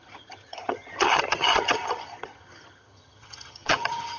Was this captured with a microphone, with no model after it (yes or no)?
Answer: no